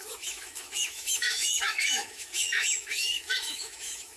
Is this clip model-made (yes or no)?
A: yes